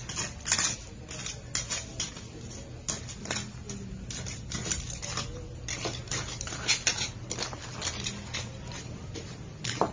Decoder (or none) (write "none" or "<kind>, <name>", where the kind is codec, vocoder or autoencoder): none